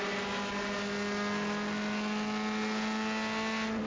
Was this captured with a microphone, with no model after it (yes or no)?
yes